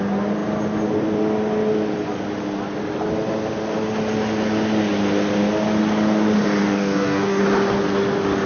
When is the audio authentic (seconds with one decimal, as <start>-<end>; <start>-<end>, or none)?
0.0-6.6; 7.4-8.5